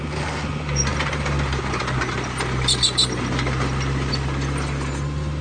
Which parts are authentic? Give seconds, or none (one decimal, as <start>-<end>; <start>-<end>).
0.0-5.4